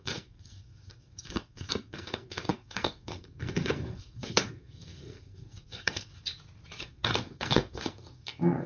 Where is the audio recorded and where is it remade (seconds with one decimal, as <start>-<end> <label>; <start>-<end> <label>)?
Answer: 0.0-6.1 remade; 6.1-6.8 recorded; 6.8-8.7 remade